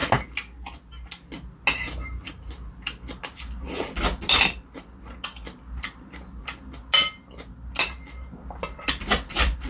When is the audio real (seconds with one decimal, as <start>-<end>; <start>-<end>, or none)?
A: 0.0-9.7